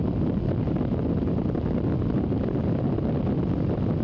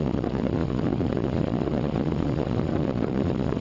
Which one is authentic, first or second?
first